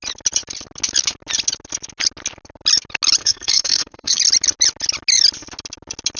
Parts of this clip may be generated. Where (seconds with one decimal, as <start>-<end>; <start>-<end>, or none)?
3.2-4.2